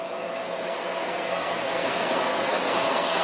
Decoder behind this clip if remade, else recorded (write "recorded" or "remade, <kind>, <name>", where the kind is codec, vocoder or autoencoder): remade, codec, SNAC